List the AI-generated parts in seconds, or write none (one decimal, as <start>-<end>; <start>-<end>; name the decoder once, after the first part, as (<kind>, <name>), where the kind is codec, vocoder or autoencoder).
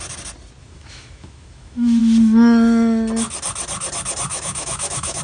0.6-2.0 (autoencoder, DAC-VAE); 4.3-5.2